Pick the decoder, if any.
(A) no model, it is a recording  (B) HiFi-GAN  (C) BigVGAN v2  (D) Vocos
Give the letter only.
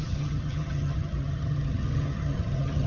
B